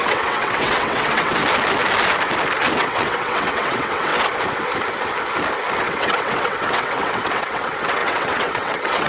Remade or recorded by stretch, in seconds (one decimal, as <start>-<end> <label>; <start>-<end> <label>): 0.0-1.4 remade; 1.4-2.7 recorded; 2.7-4.1 remade; 4.1-5.8 recorded; 5.8-9.1 remade